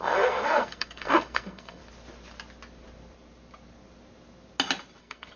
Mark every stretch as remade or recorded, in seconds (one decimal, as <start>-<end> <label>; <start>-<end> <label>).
0.0-1.8 remade; 1.8-5.0 recorded; 5.0-5.4 remade